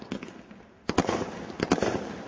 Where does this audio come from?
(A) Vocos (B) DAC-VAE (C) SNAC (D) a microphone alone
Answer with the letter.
D